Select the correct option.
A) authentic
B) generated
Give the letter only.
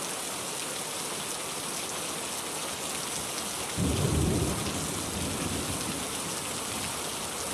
A